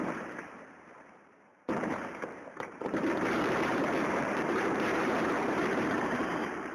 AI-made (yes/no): yes